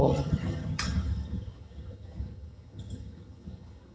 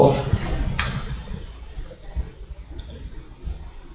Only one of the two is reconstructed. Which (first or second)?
first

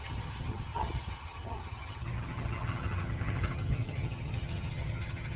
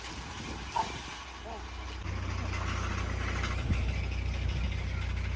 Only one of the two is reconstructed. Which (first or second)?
first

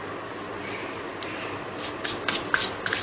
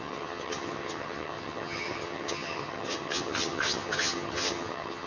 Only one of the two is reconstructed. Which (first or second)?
second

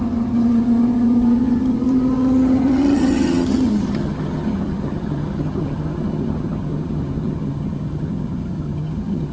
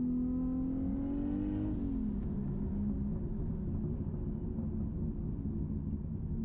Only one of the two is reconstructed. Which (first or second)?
first